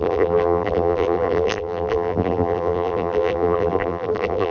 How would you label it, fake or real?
fake